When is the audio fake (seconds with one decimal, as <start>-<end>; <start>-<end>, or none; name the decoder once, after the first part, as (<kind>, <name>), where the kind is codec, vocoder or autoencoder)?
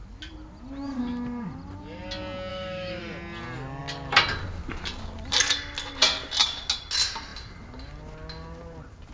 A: 2.5-3.0 (autoencoder, DAC-VAE)